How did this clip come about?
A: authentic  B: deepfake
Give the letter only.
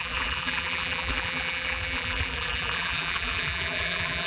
B